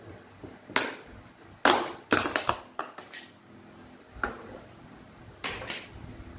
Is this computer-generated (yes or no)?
no